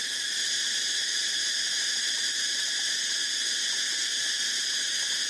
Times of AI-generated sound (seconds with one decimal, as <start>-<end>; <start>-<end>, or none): none